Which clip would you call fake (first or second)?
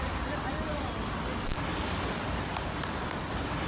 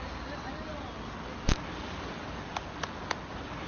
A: first